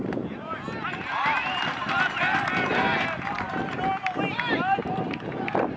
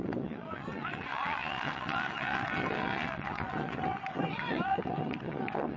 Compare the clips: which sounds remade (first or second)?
second